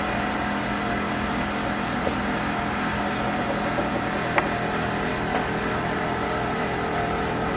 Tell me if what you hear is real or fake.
real